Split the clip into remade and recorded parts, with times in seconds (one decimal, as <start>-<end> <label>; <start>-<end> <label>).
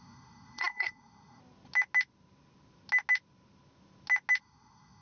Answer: 0.0-1.4 remade; 1.4-4.4 recorded; 4.4-5.0 remade